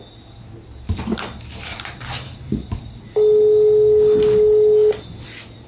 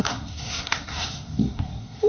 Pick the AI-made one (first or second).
second